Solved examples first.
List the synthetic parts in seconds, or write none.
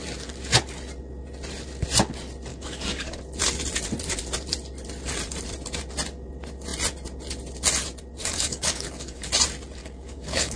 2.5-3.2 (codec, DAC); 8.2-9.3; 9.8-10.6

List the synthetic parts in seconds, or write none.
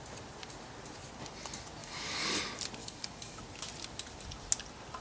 1.8-2.4 (codec, DAC); 2.8-3.4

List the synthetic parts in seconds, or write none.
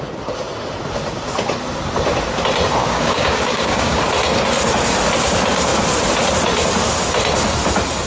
2.8-4.0 (codec, DAC)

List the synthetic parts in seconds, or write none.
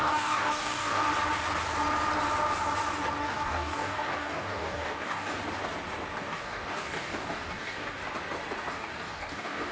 0.0-1.1 (codec, DAC); 3.2-5.4; 6.2-8.0; 8.7-9.7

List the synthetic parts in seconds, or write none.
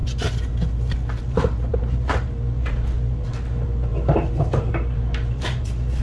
none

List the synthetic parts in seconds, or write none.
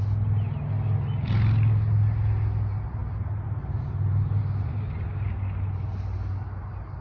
none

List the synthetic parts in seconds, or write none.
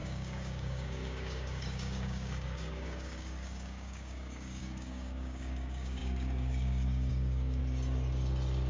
0.0-7.6 (codec, DAC)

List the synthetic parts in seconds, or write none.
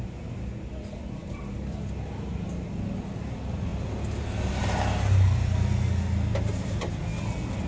none